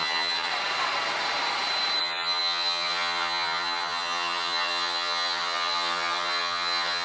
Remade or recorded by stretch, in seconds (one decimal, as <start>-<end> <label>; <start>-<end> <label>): 0.0-0.5 remade; 0.5-2.0 recorded; 2.0-7.0 remade